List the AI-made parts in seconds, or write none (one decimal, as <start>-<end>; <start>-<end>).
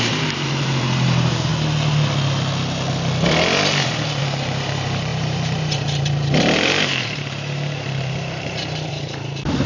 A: 0.0-1.5; 4.2-9.7